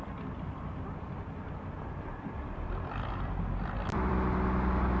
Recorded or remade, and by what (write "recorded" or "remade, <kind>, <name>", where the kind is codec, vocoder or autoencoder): remade, vocoder, BigVGAN v2